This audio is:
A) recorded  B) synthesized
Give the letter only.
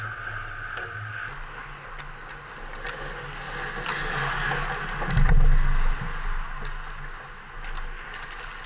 A